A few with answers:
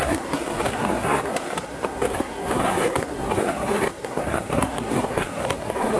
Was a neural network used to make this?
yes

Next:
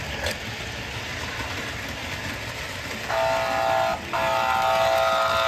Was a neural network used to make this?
no